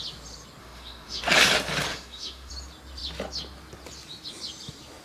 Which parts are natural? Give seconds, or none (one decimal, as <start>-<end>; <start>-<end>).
0.0-0.6; 1.2-1.9; 2.5-5.0